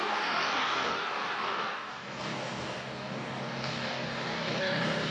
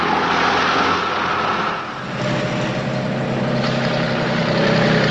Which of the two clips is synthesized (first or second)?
first